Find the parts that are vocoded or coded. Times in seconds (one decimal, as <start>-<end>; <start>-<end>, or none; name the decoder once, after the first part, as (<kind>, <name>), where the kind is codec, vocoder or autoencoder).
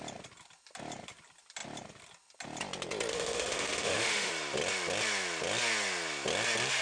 3.1-4.3 (autoencoder, DAC-VAE)